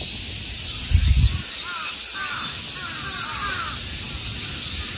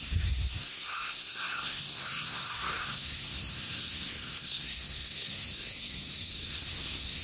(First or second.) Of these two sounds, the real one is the first